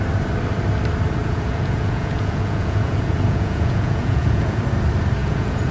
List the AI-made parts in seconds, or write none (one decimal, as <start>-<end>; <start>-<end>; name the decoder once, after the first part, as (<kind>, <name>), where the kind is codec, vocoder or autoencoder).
1.2-4.6 (vocoder, Vocos); 5.2-5.7